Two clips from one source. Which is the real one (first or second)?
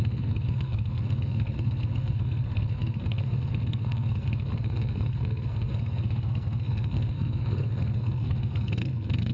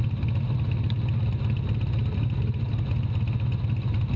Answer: second